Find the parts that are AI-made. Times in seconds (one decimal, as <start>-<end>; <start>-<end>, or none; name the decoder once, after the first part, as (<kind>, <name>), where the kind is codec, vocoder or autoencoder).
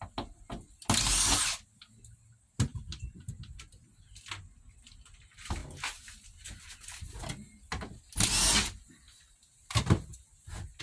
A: 2.7-3.3 (vocoder, BigVGAN v2)